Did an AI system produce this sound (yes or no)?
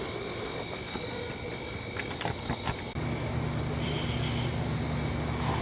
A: no